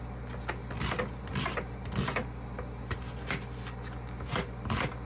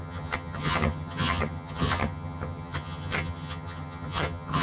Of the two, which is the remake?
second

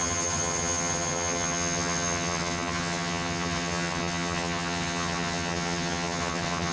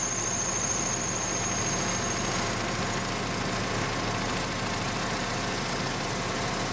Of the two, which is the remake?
first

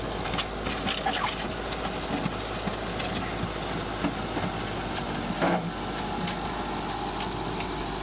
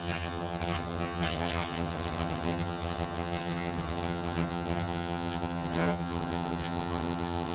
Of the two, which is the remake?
second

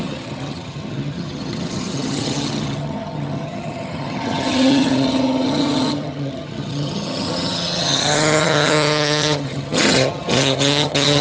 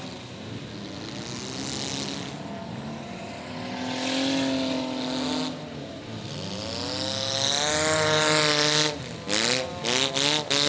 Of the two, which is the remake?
first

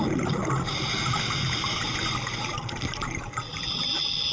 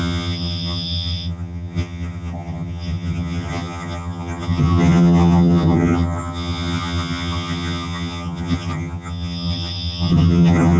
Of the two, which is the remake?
second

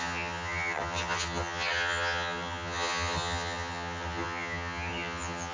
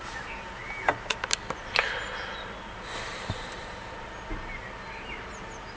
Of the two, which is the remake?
first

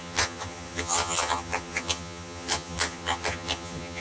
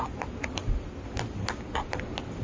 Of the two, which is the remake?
first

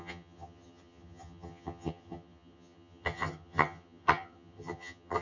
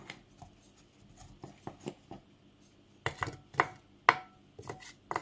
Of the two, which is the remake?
first